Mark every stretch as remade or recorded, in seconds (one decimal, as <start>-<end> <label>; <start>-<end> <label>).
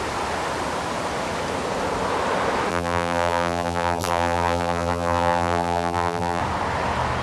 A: 0.0-2.7 recorded; 2.7-6.4 remade; 6.4-7.2 recorded